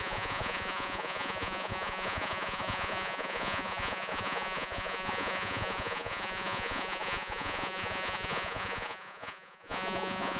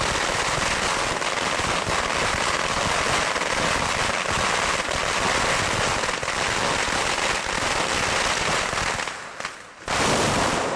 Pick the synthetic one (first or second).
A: first